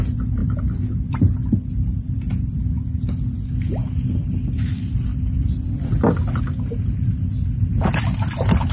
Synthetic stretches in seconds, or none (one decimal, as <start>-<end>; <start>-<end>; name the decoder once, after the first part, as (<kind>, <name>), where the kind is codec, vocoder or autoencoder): 0.4-2.6 (vocoder, BigVGAN v2); 3.8-6.1